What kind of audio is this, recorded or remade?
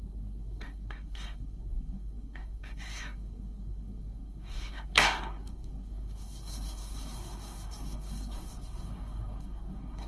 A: remade